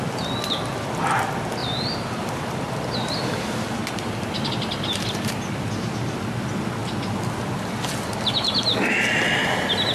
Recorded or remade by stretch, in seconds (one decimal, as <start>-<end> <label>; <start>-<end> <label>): 0.0-1.6 recorded; 1.6-5.7 remade; 5.7-9.9 recorded